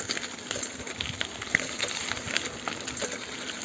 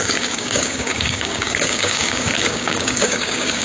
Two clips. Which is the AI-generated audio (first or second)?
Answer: second